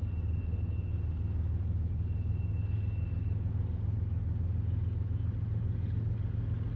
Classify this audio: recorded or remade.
recorded